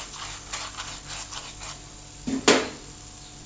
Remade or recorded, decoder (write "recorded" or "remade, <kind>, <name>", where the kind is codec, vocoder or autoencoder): recorded